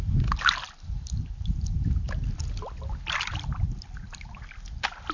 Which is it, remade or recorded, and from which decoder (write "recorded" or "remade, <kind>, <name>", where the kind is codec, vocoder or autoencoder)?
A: recorded